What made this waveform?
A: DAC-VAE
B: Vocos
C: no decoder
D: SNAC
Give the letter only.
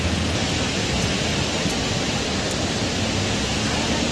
C